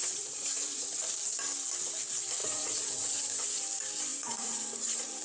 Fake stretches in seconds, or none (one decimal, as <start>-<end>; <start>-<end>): 0.0-1.0; 2.4-3.3; 4.1-5.2